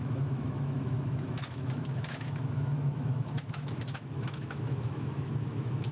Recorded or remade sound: remade